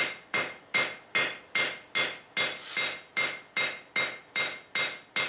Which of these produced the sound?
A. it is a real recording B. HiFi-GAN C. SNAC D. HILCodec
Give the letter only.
A